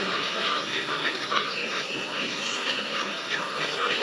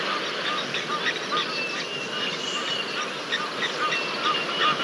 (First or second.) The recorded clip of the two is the second